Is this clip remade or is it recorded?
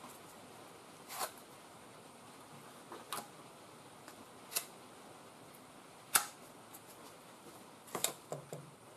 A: recorded